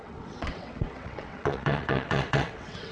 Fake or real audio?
fake